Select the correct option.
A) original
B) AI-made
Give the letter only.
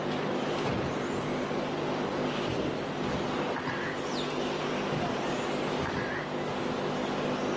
A